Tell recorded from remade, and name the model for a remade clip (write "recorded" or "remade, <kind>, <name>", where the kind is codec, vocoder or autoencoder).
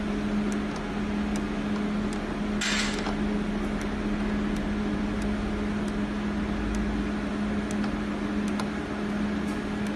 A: recorded